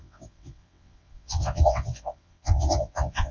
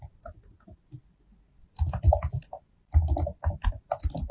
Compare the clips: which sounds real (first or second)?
second